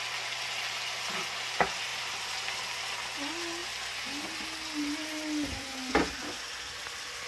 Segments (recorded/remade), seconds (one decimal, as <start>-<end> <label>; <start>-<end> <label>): 0.0-1.9 recorded; 1.9-2.6 remade; 2.6-7.3 recorded